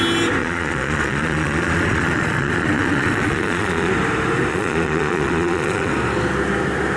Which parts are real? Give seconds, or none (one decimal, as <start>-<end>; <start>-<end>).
0.0-0.4; 3.9-4.5; 5.9-7.0